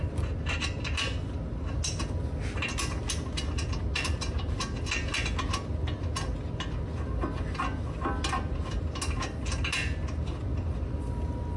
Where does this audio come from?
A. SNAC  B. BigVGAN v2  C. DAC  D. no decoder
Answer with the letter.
D